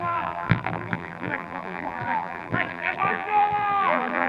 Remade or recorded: remade